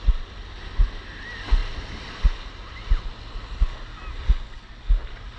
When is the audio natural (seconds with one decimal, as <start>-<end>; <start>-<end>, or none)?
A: 0.0-5.4